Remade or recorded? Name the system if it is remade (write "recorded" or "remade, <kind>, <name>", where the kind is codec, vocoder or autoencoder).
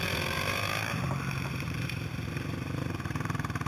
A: remade, vocoder, BigVGAN v2